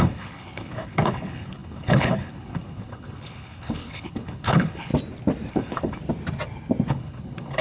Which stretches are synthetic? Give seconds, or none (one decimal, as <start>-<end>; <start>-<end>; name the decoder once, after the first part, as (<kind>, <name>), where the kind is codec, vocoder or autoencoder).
0.0-4.9 (codec, HILCodec); 5.5-6.0; 6.9-7.6